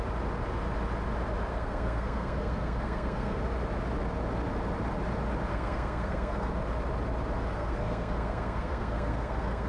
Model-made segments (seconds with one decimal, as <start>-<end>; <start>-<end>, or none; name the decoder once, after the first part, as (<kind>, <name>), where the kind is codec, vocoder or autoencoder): 1.5-3.4 (codec, SNAC); 5.5-6.5; 7.5-9.7